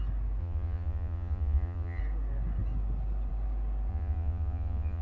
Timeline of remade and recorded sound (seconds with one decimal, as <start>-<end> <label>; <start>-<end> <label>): 0.0-0.4 recorded; 0.4-2.0 remade; 2.0-3.9 recorded; 3.9-5.0 remade